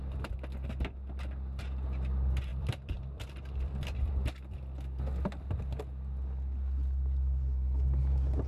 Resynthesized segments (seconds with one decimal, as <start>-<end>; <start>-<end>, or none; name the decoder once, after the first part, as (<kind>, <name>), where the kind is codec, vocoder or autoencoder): 2.5-4.1 (vocoder, BigVGAN v2)